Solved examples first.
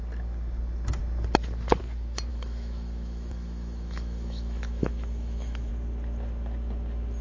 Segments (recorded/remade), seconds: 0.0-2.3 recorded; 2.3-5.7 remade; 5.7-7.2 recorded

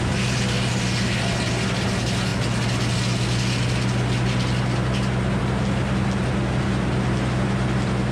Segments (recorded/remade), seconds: 0.0-8.1 recorded

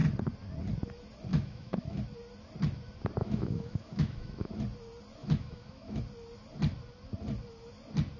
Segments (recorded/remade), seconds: 0.0-1.3 recorded; 1.3-2.0 remade; 2.0-3.2 recorded; 3.2-4.5 remade; 4.5-5.2 recorded; 5.2-6.0 remade; 6.0-8.2 recorded

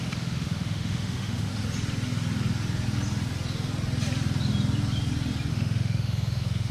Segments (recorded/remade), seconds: 0.0-1.5 remade; 1.5-5.5 recorded; 5.5-6.7 remade

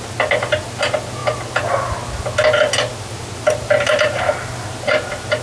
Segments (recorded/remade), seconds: 0.0-5.4 recorded

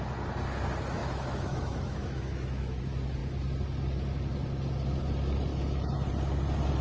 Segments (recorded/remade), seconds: 0.0-1.0 recorded; 1.0-2.8 remade; 2.8-5.5 recorded; 5.5-6.1 remade; 6.1-6.8 recorded